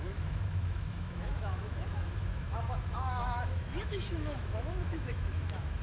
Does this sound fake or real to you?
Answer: fake